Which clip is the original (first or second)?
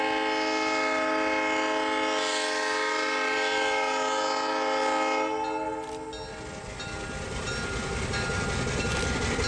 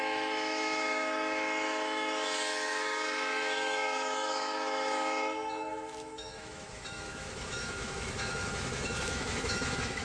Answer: first